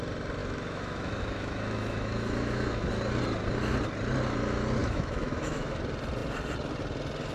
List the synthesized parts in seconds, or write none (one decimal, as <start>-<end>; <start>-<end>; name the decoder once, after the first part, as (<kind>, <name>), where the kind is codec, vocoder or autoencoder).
0.4-2.9 (autoencoder, DAC-VAE); 4.8-5.8